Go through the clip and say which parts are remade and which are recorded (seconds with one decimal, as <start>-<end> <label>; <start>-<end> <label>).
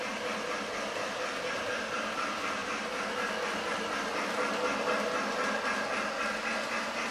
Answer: 0.0-7.1 recorded